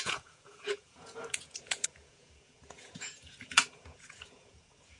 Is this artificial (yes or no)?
yes